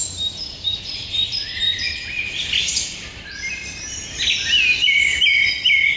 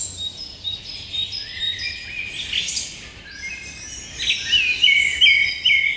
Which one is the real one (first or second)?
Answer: second